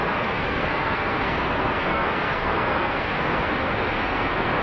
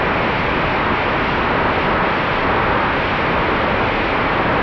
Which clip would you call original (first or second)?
second